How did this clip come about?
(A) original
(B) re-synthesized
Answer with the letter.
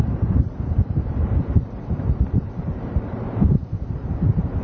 B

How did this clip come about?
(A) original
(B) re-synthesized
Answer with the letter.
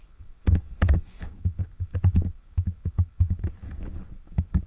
B